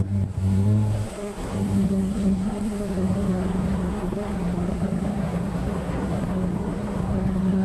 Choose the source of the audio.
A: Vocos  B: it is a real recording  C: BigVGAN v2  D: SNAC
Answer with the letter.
D